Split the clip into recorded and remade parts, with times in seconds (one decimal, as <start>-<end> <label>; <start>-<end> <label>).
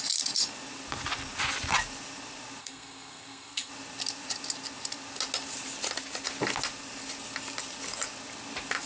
0.0-2.6 recorded; 2.6-3.7 remade; 3.7-8.9 recorded